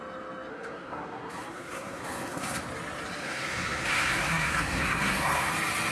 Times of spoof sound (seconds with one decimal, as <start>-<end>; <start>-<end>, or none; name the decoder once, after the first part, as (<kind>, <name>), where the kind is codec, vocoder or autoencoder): 0.5-2.6 (codec, SNAC); 3.2-5.5

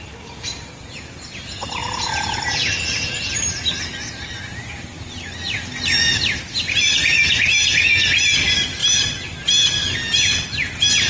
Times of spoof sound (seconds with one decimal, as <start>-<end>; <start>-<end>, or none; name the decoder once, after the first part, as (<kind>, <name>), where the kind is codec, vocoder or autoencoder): none